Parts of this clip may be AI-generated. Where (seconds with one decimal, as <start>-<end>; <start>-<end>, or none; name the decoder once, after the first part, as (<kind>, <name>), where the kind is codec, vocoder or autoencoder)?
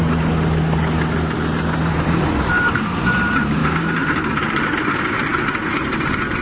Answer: 1.8-3.6 (vocoder, BigVGAN v2); 4.3-6.4